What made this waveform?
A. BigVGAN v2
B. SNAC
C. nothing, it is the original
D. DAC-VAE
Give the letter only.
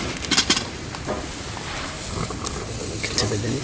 C